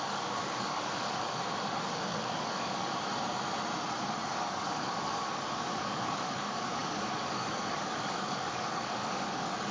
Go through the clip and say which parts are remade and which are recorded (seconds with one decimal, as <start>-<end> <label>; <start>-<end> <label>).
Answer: 0.0-3.1 remade; 3.1-4.3 recorded; 4.3-9.7 remade